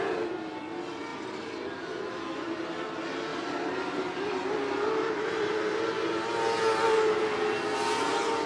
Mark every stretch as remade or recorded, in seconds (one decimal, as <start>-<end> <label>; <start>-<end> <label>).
0.0-3.3 recorded; 3.3-5.5 remade; 5.5-8.5 recorded

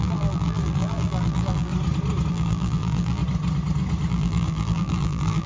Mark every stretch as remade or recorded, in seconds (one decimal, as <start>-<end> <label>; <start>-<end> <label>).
0.0-1.7 remade; 1.7-2.3 recorded; 2.3-3.2 remade; 3.2-4.1 recorded; 4.1-5.5 remade

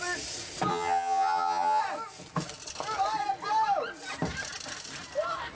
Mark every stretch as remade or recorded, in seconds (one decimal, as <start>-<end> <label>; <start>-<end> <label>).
0.0-0.7 recorded; 0.7-1.8 remade; 1.8-5.6 recorded

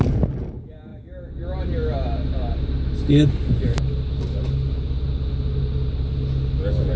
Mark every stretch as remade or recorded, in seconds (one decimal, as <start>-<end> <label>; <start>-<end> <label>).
0.0-7.0 recorded